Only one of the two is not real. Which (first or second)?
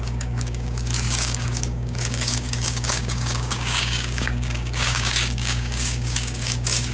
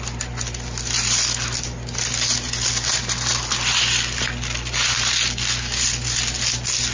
first